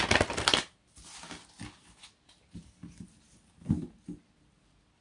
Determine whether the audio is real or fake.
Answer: real